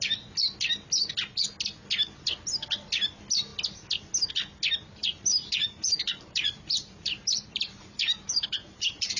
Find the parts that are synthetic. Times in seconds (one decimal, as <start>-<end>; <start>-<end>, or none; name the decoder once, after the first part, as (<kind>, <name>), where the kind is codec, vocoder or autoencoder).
5.0-9.2 (vocoder, BigVGAN v2)